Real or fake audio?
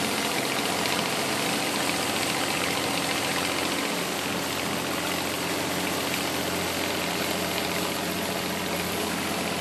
real